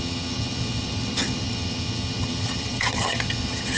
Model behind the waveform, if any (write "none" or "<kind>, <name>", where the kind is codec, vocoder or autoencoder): vocoder, HiFi-GAN